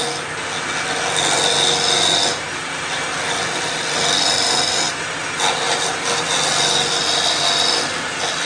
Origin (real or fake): real